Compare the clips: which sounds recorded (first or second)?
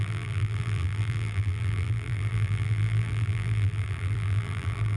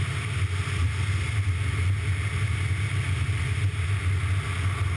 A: second